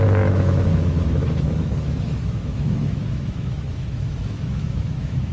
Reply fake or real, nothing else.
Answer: fake